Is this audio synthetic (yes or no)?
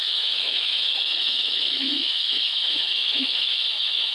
yes